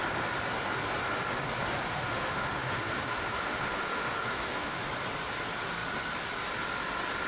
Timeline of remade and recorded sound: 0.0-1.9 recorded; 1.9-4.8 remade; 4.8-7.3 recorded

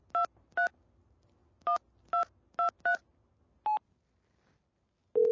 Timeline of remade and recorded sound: 0.0-5.3 recorded